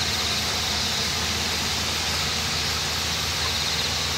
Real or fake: real